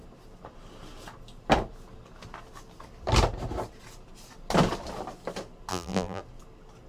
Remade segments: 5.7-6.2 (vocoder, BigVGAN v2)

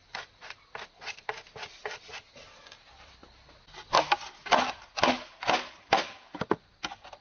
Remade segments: none

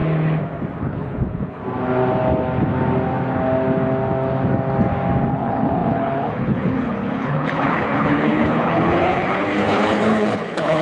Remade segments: 0.8-1.6 (codec, HILCodec); 5.3-10.8

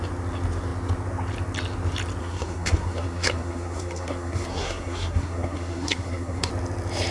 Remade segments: 2.2-6.5 (codec, SNAC)

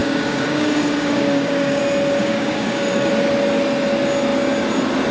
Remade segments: 0.0-1.8 (codec, DAC); 2.2-3.1

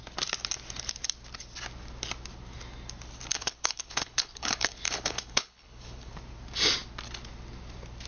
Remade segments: 3.3-6.1 (codec, HILCodec)

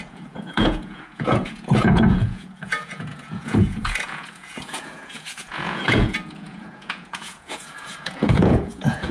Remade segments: 0.0-9.1 (vocoder, Vocos)

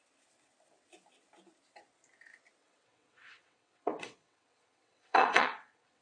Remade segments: 2.6-6.0 (vocoder, WaveNeXt)